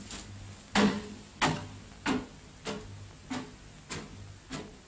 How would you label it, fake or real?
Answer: real